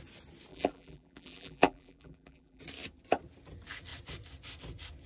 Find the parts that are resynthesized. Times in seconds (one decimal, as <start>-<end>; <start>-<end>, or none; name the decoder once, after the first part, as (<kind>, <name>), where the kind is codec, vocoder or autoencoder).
0.5-2.6 (vocoder, BigVGAN v2)